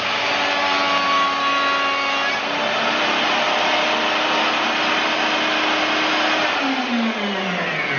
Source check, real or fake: real